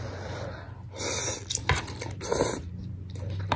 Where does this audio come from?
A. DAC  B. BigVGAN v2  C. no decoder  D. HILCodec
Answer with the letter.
C